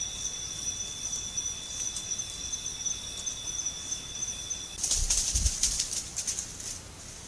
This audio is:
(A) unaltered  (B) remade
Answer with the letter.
A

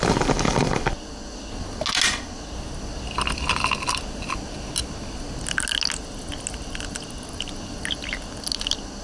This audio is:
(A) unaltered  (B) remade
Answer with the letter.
A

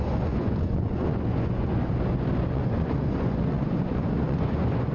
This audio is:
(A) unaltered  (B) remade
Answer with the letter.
B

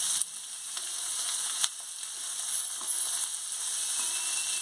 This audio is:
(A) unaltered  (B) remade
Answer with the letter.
A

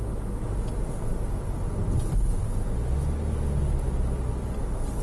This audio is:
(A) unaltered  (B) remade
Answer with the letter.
A